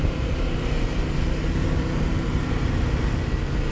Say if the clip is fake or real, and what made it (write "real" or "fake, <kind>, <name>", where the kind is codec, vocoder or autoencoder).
real